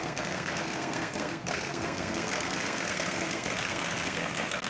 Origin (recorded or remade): remade